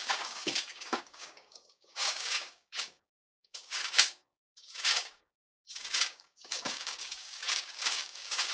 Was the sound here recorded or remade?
remade